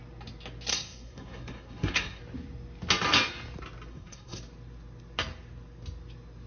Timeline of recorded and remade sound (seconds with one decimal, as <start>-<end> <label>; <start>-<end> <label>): 0.0-0.7 recorded; 0.7-2.2 remade; 2.2-3.9 recorded; 3.9-4.4 remade; 4.4-6.5 recorded